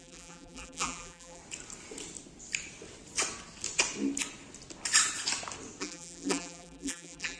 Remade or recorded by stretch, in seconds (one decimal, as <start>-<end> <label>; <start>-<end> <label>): 0.0-1.4 remade; 1.4-5.8 recorded; 5.8-7.4 remade